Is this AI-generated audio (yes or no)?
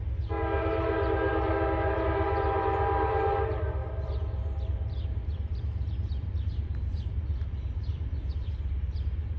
yes